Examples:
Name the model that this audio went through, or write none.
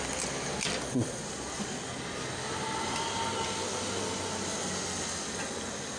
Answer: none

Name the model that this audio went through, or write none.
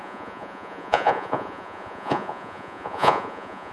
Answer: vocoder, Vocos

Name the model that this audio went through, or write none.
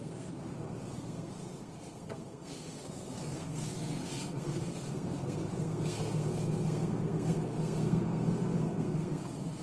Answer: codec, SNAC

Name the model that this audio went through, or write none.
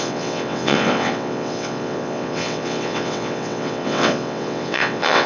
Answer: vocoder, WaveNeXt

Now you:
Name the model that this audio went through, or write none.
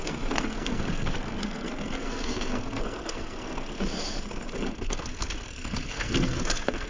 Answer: codec, SNAC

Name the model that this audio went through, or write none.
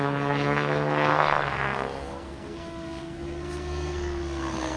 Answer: codec, SNAC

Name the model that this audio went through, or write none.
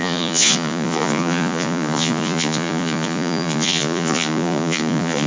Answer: vocoder, Vocos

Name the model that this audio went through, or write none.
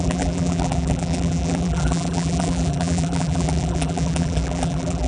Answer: vocoder, BigVGAN v2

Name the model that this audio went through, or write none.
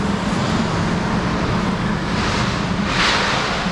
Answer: none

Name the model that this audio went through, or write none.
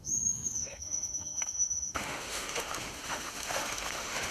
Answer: autoencoder, DAC-VAE